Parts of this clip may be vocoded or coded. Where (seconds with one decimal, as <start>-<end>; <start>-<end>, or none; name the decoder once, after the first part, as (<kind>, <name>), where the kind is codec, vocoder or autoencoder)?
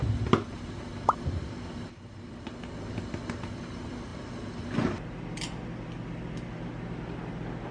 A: none